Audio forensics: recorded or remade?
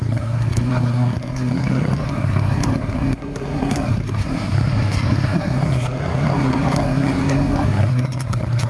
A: remade